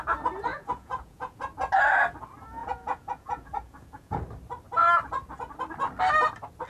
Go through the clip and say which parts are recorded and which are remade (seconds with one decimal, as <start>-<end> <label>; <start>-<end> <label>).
0.0-0.5 recorded; 0.5-1.4 remade; 1.4-2.6 recorded; 2.6-4.2 remade; 4.2-6.7 recorded